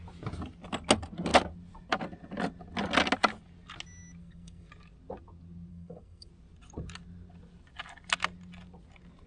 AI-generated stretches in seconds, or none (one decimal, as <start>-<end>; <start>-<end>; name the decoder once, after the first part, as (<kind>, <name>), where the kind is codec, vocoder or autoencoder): 4.2-4.7 (codec, SNAC); 5.7-6.3